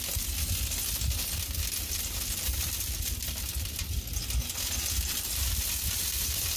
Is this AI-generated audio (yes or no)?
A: no